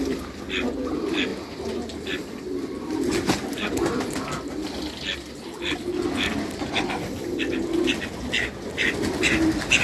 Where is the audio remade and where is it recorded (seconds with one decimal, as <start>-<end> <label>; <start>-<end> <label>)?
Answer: 0.0-9.8 recorded